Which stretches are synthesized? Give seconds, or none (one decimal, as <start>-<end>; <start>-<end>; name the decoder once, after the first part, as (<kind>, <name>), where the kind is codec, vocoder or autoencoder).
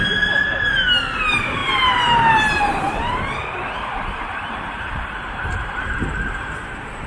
0.0-1.6 (vocoder, BigVGAN v2); 2.3-7.1